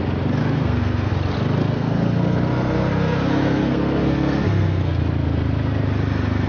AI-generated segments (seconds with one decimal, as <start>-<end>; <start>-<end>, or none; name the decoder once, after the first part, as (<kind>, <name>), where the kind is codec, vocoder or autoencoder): 0.4-1.1 (codec, SNAC); 1.6-5.0